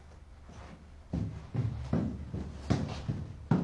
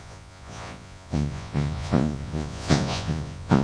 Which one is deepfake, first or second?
second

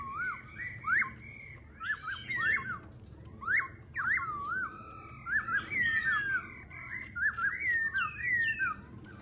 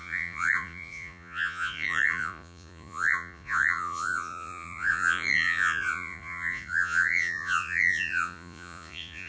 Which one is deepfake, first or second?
second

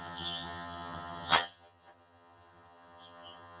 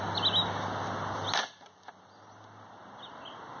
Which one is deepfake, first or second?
first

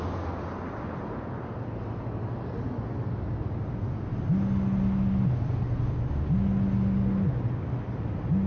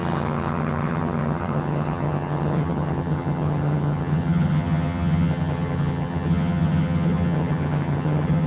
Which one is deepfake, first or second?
second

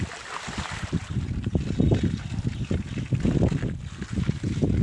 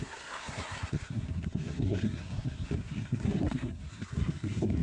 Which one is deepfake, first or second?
second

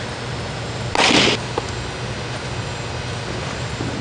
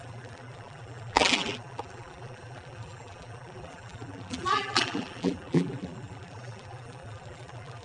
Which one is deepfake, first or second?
second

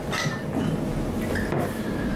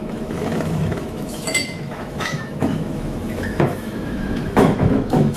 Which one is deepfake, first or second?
second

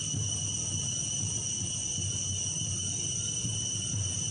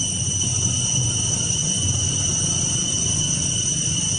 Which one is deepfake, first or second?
second